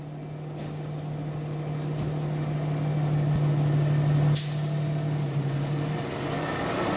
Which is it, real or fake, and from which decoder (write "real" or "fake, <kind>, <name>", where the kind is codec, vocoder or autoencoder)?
real